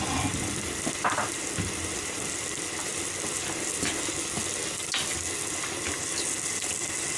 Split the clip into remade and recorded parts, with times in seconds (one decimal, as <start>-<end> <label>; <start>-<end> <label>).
0.0-7.2 recorded